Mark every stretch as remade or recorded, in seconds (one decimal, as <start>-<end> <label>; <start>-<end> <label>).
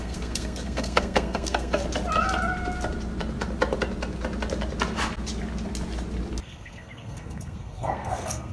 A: 0.0-1.8 remade; 1.8-6.4 recorded; 6.4-8.5 remade